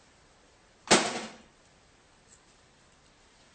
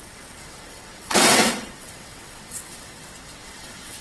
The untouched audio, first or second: first